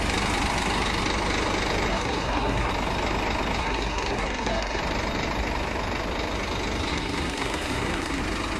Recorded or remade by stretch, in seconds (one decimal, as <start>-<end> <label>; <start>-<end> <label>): 0.0-1.9 recorded; 1.9-2.7 remade; 2.7-3.6 recorded; 3.6-4.8 remade; 4.8-6.9 recorded; 6.9-8.2 remade; 8.2-8.6 recorded